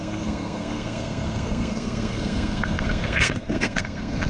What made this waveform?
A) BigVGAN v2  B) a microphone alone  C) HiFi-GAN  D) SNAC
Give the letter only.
D